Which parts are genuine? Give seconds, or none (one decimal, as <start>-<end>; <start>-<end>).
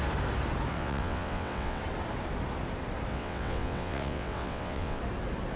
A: 0.0-0.7; 1.8-3.1; 5.0-5.6